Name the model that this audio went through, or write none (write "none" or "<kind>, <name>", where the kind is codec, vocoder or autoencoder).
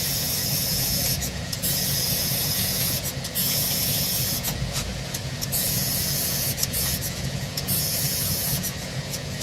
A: vocoder, Vocos